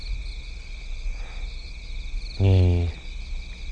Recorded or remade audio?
recorded